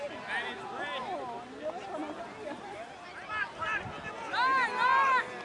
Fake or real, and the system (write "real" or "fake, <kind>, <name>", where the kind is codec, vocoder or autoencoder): real